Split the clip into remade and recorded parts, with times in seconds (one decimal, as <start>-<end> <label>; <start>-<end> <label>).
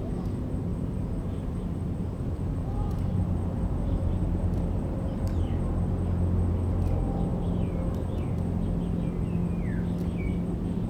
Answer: 0.0-0.7 recorded; 0.7-5.7 remade; 5.7-10.9 recorded